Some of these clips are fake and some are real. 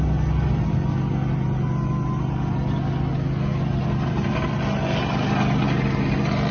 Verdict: real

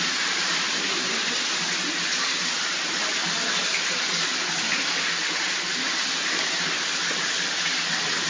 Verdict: real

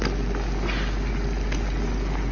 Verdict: real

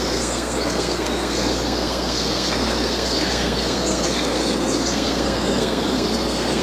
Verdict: fake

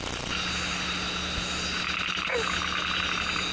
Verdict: real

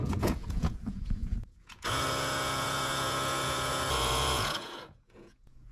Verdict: fake